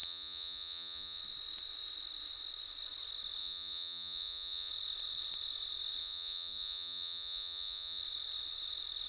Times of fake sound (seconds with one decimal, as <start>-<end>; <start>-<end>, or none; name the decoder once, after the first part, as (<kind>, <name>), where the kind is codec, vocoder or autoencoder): 0.0-1.2 (vocoder, Vocos); 3.4-4.7; 6.0-8.0